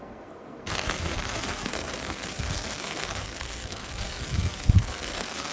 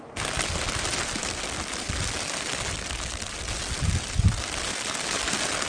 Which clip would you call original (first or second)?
second